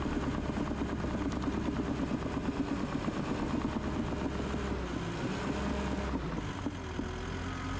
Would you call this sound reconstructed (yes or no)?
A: no